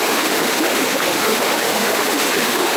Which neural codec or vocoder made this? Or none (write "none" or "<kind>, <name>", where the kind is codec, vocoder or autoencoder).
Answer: autoencoder, DAC-VAE